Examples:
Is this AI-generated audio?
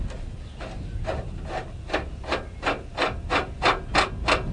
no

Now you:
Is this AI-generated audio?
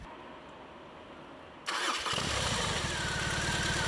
no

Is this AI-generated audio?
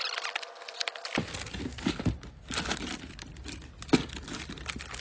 no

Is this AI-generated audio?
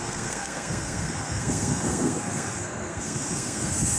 yes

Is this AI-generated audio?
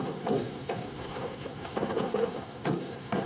yes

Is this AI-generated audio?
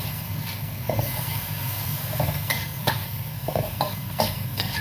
yes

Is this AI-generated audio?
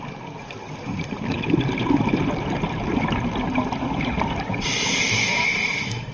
no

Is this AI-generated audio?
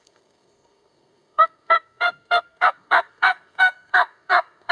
yes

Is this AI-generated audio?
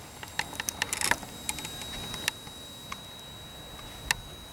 no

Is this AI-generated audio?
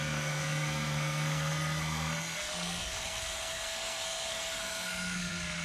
yes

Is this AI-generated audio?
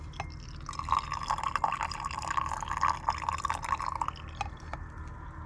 no